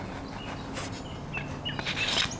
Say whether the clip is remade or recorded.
recorded